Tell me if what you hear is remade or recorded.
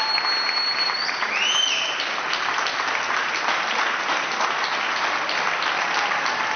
recorded